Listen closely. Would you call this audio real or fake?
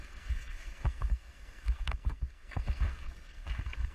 fake